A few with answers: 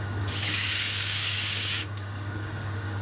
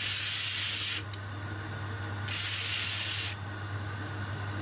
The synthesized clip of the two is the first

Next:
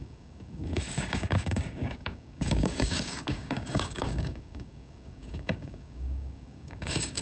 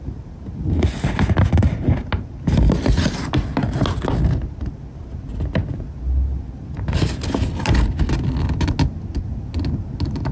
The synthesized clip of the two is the first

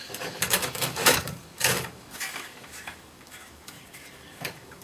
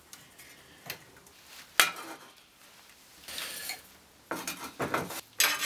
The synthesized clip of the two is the first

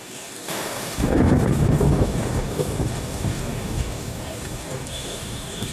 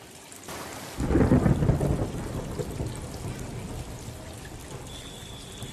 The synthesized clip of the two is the first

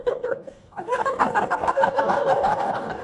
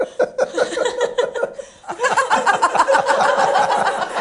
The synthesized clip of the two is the first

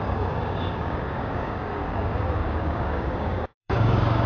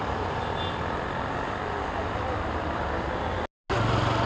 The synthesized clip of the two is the first